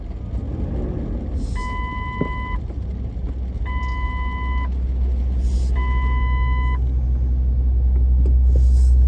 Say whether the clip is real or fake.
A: real